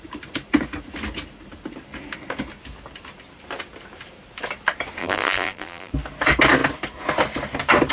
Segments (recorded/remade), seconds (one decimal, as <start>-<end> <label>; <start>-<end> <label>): 0.0-5.0 recorded; 5.0-5.9 remade; 5.9-7.9 recorded